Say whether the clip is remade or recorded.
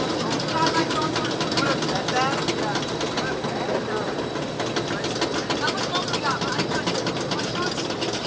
recorded